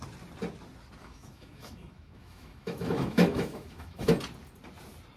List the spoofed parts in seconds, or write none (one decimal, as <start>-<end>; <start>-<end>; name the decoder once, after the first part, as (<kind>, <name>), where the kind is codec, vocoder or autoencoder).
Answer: 1.0-4.1 (autoencoder, DAC-VAE)